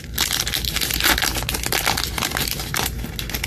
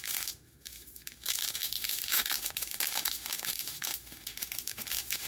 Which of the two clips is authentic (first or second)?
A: first